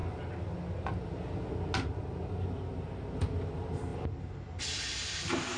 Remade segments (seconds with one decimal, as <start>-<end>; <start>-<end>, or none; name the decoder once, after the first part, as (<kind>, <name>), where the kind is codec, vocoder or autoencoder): none